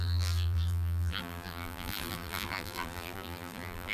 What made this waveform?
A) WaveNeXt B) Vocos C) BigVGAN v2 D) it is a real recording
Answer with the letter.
C